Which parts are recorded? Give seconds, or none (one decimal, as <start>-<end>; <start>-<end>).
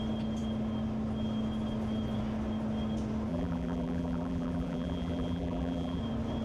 0.0-3.3; 6.0-6.4